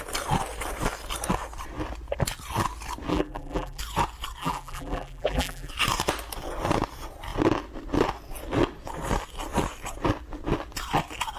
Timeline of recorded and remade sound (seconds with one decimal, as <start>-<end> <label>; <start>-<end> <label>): 0.0-3.1 recorded; 3.1-3.8 remade; 3.8-4.4 recorded; 4.4-5.7 remade; 5.7-11.4 recorded